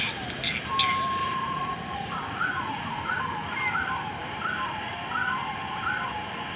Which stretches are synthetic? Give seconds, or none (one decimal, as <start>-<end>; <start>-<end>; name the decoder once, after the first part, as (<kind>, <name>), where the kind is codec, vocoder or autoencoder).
1.2-3.2 (vocoder, Vocos)